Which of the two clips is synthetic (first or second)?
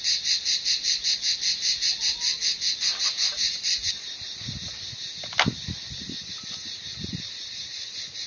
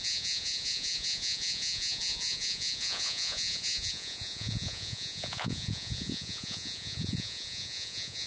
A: second